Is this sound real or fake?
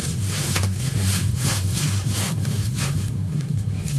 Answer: fake